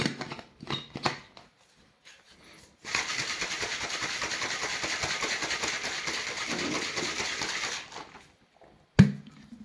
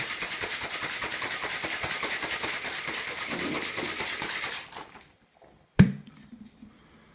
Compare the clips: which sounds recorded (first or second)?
first